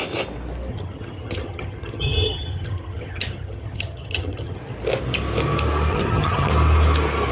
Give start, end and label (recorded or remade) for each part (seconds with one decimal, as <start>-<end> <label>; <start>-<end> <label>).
0.0-0.7 recorded; 0.7-4.6 remade; 4.6-5.9 recorded; 5.9-6.5 remade; 6.5-7.3 recorded